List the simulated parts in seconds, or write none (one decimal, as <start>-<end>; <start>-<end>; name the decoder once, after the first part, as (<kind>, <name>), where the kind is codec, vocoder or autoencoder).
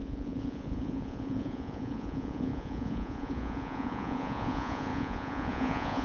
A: 0.0-6.0 (vocoder, Vocos)